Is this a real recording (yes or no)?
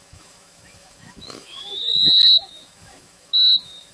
no